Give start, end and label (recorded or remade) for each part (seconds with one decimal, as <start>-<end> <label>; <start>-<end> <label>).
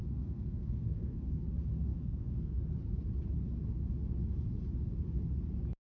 0.0-1.4 remade; 1.4-1.9 recorded; 1.9-2.6 remade; 2.6-5.9 recorded